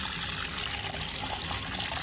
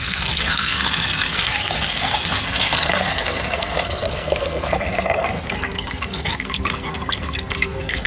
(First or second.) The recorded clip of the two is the first